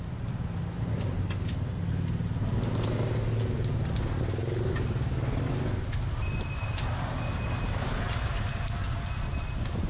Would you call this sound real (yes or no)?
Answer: yes